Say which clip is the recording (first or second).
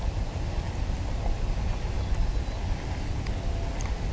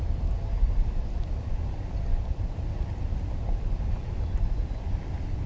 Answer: first